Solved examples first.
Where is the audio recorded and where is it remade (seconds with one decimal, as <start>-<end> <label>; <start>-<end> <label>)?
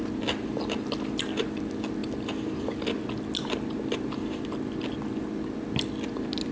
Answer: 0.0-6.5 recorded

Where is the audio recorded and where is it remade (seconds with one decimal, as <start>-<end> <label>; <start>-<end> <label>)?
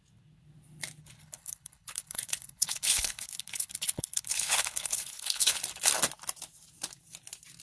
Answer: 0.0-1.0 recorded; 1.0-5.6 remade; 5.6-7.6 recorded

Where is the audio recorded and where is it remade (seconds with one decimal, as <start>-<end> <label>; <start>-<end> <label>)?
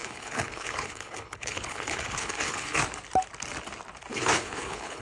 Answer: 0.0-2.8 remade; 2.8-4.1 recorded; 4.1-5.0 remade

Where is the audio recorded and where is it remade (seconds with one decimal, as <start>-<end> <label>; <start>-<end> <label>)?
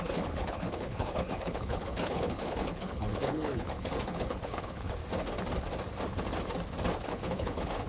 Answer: 0.0-5.0 remade; 5.0-7.0 recorded; 7.0-7.9 remade